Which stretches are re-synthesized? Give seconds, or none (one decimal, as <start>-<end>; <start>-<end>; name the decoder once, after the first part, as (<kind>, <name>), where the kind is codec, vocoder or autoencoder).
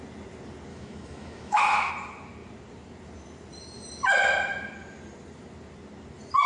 0.7-1.9 (autoencoder, DAC-VAE)